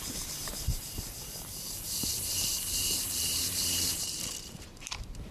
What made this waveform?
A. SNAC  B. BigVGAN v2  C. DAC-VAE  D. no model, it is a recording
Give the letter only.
B